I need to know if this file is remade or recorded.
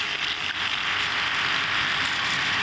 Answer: recorded